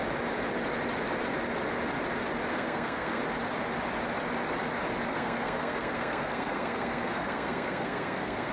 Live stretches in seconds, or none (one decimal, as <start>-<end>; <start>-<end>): 0.0-2.5; 3.2-5.1